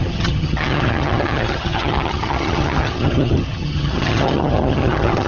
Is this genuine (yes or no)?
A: no